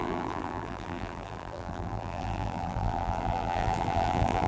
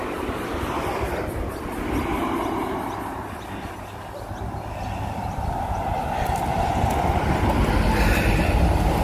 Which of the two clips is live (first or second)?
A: second